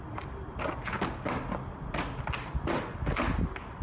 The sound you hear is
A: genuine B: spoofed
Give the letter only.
A